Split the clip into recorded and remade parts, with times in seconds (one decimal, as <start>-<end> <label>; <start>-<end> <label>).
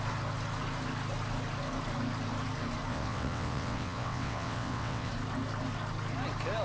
0.0-2.9 recorded; 2.9-5.1 remade; 5.1-6.6 recorded